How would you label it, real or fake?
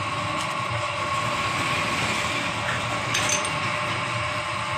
real